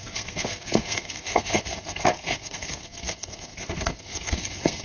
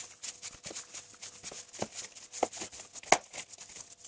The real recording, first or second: second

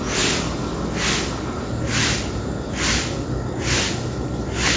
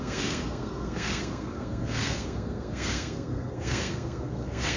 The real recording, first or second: first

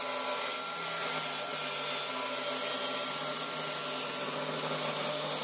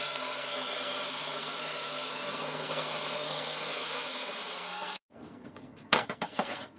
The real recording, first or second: first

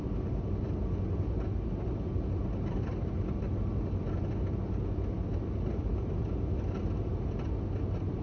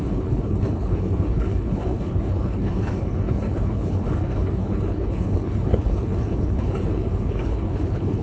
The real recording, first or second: first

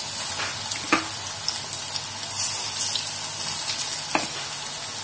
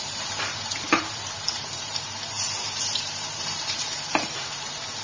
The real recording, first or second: first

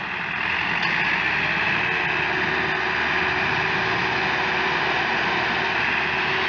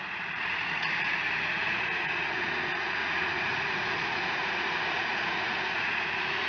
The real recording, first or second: first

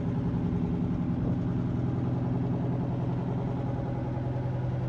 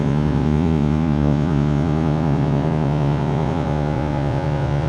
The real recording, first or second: first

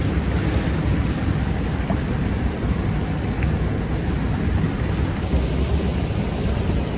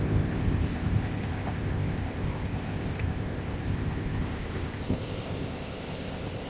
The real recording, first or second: first